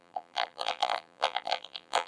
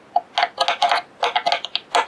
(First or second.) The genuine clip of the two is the second